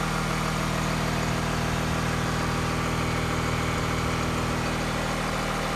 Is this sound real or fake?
real